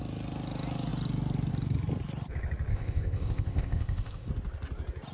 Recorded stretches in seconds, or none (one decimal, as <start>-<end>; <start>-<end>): 0.0-2.7; 4.3-5.1